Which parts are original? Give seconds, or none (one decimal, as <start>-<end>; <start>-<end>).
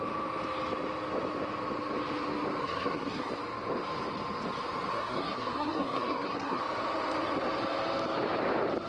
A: 0.0-2.6; 3.3-4.9; 6.6-8.9